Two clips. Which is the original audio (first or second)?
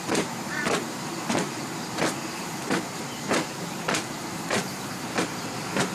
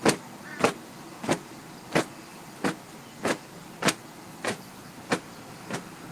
second